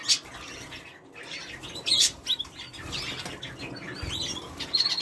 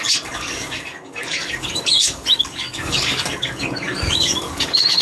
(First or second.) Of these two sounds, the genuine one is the first